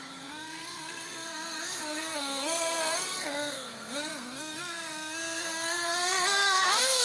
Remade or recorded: remade